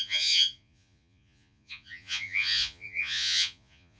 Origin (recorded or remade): remade